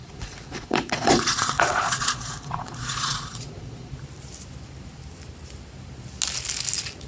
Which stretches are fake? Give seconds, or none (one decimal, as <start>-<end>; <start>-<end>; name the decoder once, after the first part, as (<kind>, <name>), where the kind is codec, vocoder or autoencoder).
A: 0.0-3.9 (vocoder, Vocos)